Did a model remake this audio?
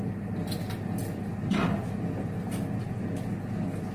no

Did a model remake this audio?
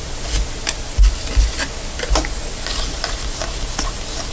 no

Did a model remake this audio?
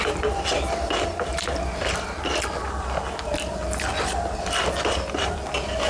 no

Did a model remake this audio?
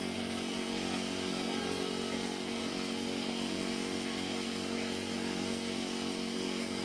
yes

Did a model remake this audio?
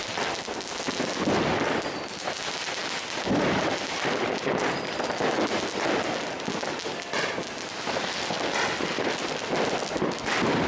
no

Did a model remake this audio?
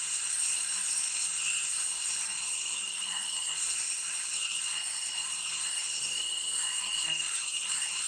yes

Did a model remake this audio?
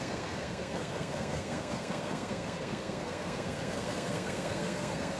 yes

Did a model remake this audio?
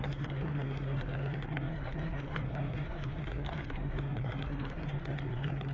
yes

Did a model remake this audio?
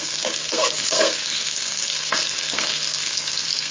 yes